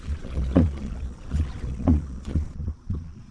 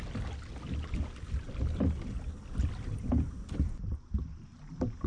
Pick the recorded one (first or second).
second